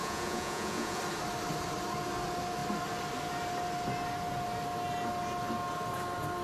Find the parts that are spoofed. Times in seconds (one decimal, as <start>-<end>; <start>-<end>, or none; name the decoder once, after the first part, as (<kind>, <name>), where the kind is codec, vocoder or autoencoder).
0.0-1.0 (vocoder, Vocos)